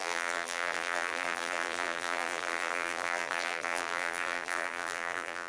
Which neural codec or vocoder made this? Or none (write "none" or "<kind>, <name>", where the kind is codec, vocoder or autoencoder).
vocoder, BigVGAN v2